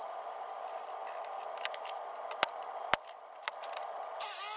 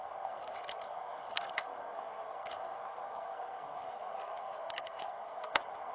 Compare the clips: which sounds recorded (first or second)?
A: first